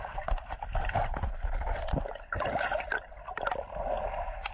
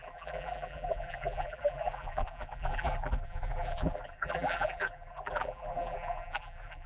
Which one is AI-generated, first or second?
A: second